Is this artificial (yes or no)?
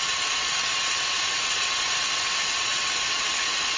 yes